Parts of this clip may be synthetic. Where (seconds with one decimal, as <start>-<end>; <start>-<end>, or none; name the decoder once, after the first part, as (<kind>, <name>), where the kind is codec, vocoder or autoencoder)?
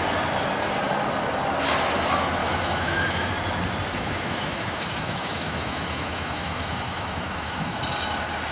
2.4-3.3 (autoencoder, DAC-VAE); 3.9-7.8